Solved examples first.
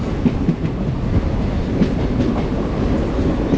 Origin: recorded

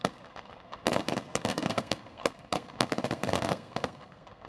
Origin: remade